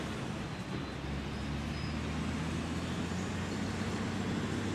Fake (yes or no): no